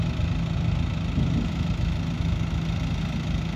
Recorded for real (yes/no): yes